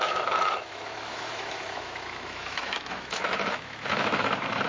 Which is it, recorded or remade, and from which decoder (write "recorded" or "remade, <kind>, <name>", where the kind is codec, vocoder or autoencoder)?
remade, autoencoder, DAC-VAE